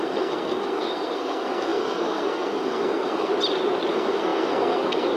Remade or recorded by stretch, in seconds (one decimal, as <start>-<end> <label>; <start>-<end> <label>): 0.0-3.3 remade; 3.3-3.9 recorded; 3.9-5.2 remade